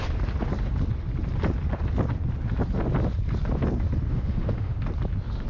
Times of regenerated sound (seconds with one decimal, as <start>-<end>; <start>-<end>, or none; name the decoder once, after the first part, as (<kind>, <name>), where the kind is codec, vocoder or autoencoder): 4.1-4.8 (autoencoder, DAC-VAE)

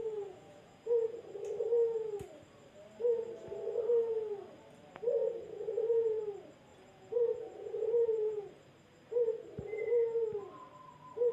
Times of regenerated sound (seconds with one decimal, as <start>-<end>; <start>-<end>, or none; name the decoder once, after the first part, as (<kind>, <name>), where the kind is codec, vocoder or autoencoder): 0.0-1.2 (vocoder, Vocos); 5.2-6.2; 6.7-8.5